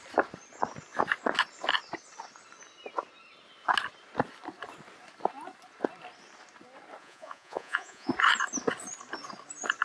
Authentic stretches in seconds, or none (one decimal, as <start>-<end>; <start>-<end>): 0.0-7.0; 8.1-9.8